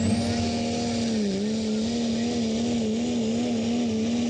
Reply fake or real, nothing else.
real